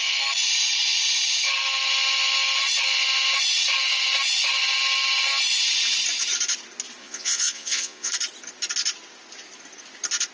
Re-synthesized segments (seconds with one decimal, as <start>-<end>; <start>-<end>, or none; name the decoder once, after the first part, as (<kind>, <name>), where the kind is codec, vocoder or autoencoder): 7.0-8.1 (vocoder, Vocos)